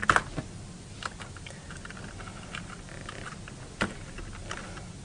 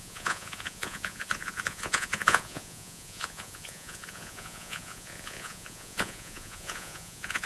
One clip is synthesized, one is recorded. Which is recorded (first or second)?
first